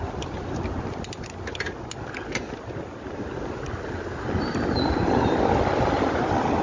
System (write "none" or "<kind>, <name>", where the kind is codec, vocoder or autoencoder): none